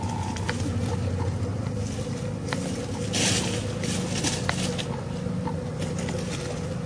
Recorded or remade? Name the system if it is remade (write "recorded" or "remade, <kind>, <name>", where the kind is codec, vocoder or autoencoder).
recorded